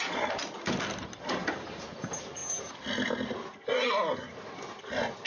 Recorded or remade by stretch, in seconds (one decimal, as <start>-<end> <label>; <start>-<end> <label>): 0.0-5.3 recorded